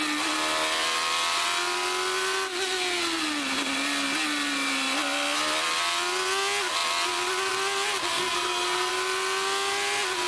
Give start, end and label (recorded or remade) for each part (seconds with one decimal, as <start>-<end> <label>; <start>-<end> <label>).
0.0-8.1 recorded; 8.1-8.9 remade; 8.9-10.3 recorded